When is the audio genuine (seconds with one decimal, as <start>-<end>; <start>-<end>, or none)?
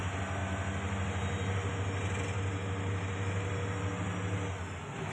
0.0-5.1